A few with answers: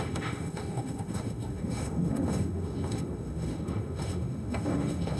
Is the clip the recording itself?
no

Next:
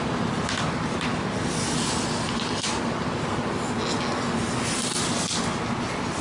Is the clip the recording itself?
yes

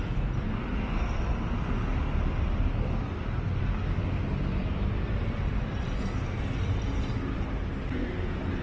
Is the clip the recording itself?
yes